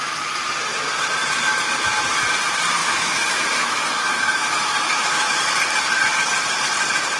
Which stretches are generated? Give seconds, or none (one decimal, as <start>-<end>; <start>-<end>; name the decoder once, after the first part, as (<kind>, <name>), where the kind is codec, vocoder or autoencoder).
2.8-5.4 (autoencoder, DAC-VAE)